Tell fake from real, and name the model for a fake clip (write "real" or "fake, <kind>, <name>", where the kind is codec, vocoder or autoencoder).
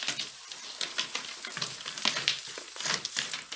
real